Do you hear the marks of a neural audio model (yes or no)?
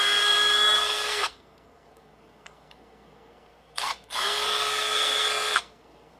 yes